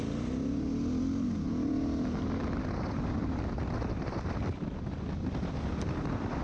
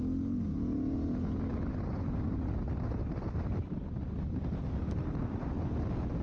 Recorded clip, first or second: second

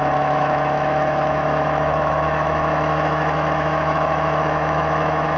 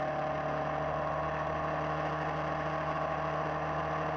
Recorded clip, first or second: second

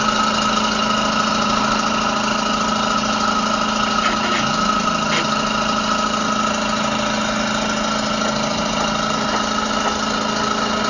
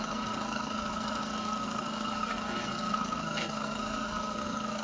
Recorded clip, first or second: first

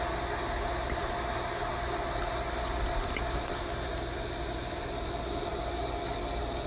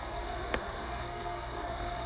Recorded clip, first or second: first